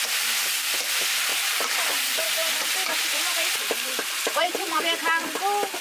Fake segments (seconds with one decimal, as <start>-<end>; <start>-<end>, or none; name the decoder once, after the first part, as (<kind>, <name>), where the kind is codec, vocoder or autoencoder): 1.3-4.8 (vocoder, BigVGAN v2)